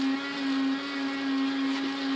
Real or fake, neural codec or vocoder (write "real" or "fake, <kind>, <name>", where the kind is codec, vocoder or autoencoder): real